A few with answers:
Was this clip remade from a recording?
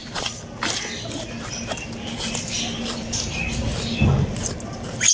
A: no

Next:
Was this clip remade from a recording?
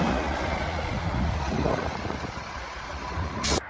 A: yes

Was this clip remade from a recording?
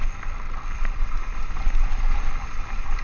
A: no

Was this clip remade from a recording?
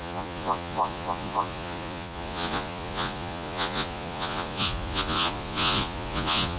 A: yes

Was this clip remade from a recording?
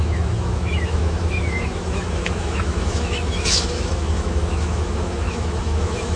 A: yes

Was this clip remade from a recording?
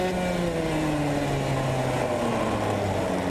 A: no